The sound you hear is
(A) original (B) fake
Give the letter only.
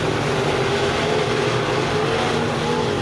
A